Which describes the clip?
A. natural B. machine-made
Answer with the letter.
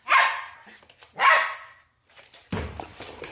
A